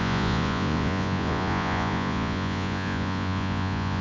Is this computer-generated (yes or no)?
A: yes